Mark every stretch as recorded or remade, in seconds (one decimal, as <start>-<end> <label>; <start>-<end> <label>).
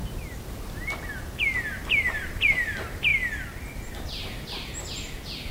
0.0-2.0 recorded; 2.0-3.1 remade; 3.1-5.5 recorded